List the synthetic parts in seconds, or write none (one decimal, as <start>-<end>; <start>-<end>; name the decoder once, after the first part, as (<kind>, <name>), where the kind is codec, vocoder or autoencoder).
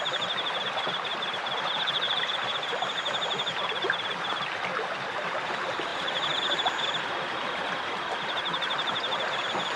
1.1-3.9 (vocoder, BigVGAN v2); 5.9-7.3